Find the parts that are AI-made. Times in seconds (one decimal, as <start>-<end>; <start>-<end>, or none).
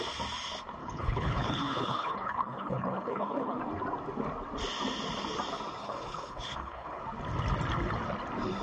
0.8-3.6; 5.8-7.0